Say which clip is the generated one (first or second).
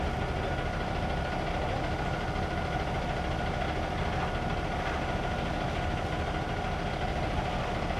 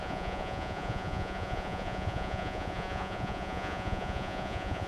second